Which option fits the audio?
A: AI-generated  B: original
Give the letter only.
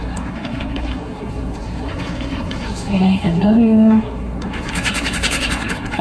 A